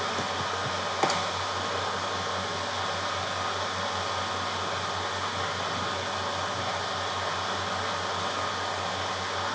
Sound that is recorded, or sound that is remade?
recorded